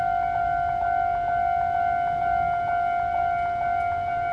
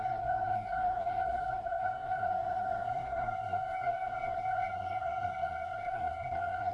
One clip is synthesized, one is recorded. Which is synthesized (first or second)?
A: second